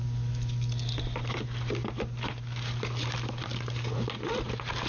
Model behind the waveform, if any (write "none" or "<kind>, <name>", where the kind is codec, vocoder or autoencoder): none